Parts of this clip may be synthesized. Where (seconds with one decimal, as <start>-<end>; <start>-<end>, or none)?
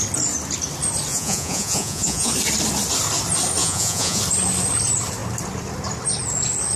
1.1-2.3; 3.6-4.2